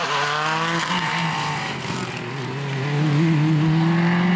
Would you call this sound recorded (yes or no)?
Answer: yes